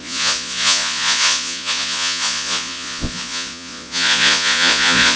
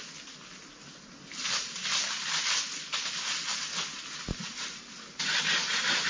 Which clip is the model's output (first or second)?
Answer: first